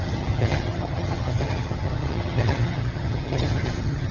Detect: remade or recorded remade